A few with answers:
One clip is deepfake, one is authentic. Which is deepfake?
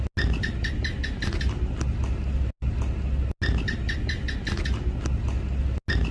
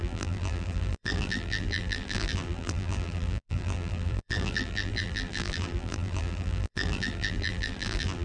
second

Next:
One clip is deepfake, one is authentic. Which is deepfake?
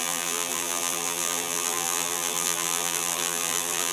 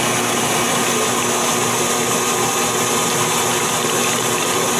first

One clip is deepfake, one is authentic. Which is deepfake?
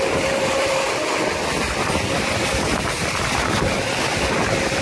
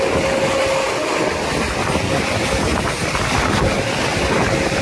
first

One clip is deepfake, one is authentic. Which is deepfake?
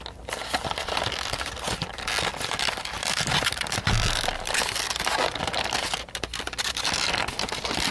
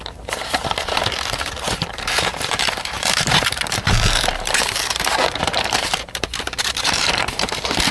second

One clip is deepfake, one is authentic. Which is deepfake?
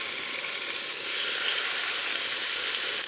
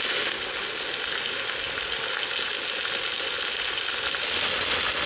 first